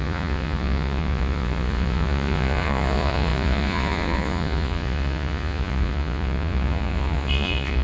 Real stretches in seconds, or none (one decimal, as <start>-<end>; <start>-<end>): none